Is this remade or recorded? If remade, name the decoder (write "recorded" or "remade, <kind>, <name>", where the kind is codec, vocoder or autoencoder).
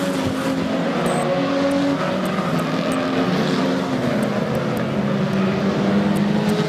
recorded